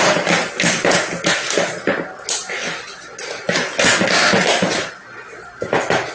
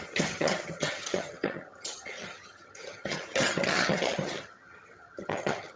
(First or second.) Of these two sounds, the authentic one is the first